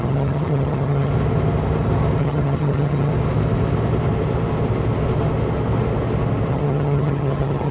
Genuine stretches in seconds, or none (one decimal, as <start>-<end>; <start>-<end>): 1.1-2.2; 3.1-6.5